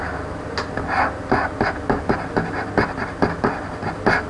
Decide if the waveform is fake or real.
real